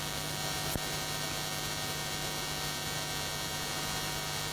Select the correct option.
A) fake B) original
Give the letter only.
B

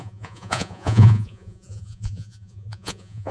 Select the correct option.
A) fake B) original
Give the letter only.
A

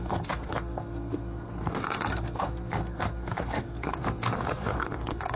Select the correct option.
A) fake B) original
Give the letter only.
A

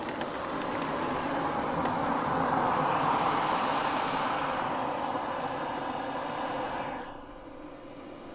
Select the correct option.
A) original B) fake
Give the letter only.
A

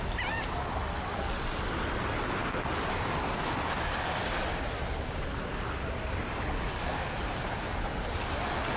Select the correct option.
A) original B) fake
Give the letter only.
A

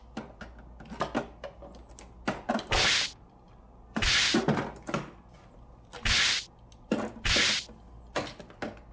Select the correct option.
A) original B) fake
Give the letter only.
A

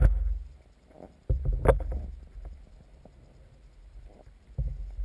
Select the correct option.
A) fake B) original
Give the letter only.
B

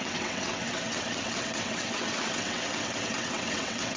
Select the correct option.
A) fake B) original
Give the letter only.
A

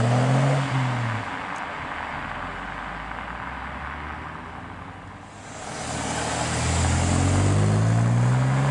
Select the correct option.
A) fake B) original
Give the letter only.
B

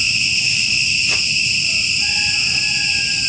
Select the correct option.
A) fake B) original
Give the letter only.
B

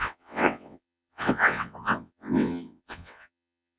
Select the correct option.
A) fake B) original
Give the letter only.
A